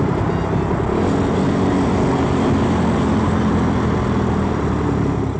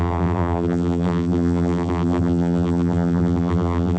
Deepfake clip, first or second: second